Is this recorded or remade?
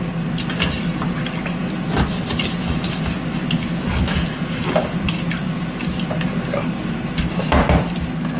recorded